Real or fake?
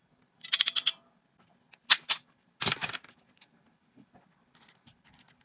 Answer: real